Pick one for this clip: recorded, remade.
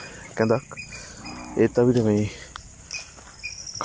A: recorded